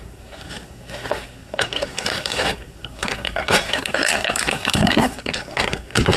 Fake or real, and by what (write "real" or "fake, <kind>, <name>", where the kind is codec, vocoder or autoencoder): fake, codec, SNAC